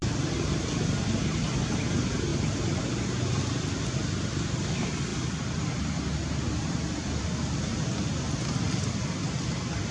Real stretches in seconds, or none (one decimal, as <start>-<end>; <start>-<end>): 1.5-2.3; 3.4-9.9